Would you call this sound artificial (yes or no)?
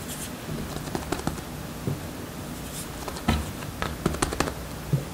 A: no